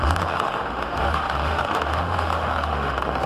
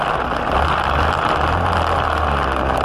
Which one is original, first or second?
second